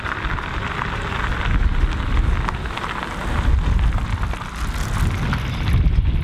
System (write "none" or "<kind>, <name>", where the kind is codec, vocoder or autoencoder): none